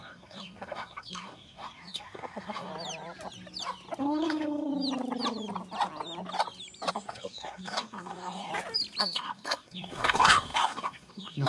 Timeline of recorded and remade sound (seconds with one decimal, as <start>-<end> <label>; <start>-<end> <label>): 0.0-2.7 remade; 2.7-4.0 recorded; 4.0-4.7 remade; 4.7-6.9 recorded; 6.9-8.5 remade; 8.5-9.0 recorded; 9.0-11.5 remade